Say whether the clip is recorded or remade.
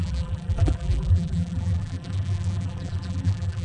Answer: remade